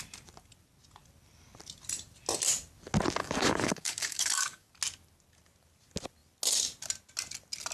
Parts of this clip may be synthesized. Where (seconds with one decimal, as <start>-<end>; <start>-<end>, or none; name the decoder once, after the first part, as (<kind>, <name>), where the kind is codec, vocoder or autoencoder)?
3.2-4.7 (codec, DAC)